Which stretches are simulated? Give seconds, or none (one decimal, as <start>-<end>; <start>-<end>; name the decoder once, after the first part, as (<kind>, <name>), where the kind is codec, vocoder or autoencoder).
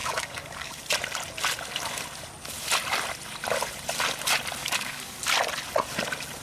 0.0-0.8 (codec, DAC); 4.6-5.2